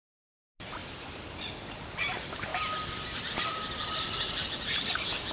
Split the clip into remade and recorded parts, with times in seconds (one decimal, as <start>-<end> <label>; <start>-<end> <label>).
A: 0.0-0.8 recorded; 0.8-1.5 remade; 1.5-5.3 recorded